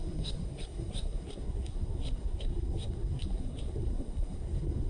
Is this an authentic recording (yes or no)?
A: no